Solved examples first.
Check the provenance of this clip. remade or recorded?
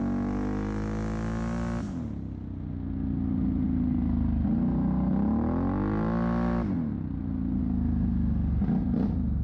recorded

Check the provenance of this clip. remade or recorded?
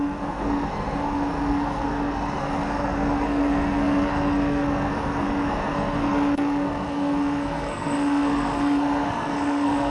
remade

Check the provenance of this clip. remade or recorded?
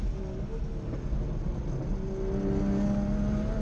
recorded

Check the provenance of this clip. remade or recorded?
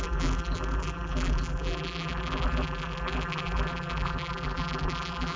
remade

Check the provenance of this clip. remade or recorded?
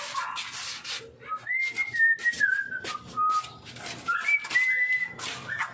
recorded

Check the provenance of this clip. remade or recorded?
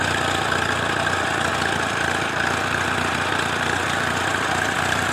recorded